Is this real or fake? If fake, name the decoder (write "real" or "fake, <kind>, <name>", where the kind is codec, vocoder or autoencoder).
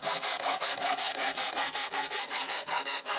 fake, codec, SNAC